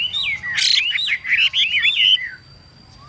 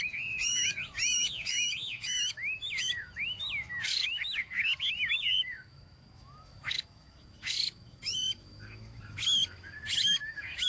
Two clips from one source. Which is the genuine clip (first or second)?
first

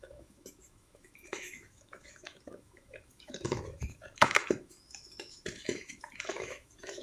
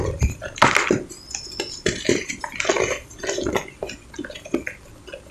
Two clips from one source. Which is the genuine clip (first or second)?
second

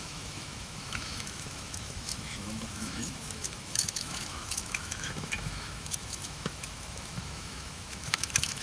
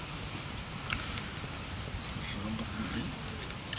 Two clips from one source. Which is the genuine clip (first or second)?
second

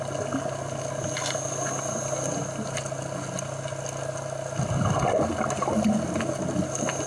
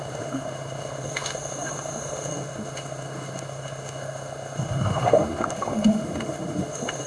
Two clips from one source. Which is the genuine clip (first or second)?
first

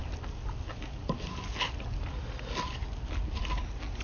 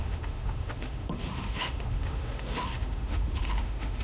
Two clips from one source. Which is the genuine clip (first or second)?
first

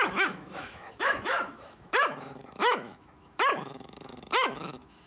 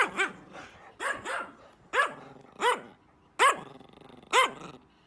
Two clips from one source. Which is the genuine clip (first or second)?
second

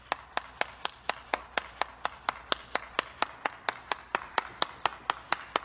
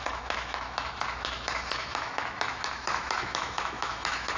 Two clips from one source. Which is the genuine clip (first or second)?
first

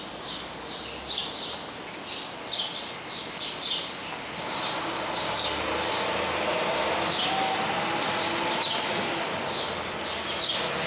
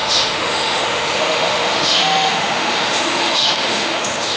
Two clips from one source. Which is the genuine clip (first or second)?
first